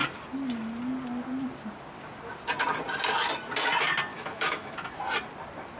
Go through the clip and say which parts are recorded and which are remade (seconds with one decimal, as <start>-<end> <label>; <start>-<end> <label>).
0.0-4.1 recorded; 4.1-5.0 remade; 5.0-5.8 recorded